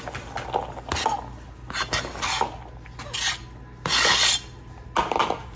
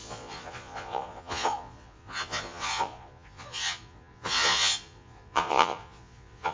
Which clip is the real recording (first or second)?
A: first